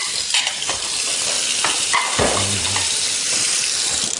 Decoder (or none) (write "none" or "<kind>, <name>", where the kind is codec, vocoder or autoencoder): vocoder, BigVGAN v2